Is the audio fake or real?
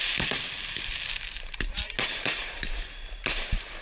real